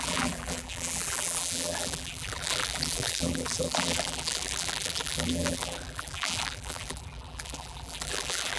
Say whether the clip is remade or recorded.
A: remade